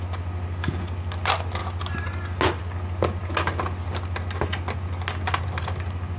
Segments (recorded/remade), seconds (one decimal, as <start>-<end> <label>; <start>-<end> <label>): 0.0-6.2 recorded